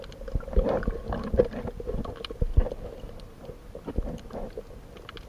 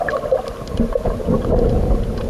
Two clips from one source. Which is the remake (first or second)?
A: second